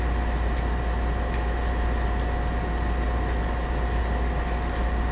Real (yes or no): yes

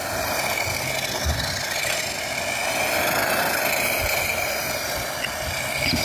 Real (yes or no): yes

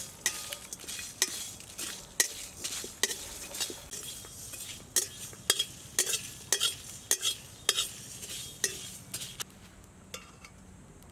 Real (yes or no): yes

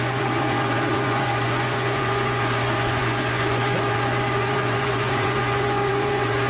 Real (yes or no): no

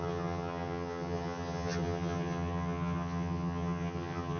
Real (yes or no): no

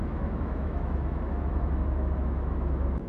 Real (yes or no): no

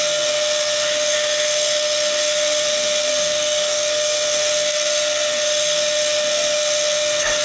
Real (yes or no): no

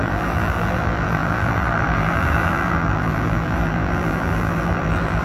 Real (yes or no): no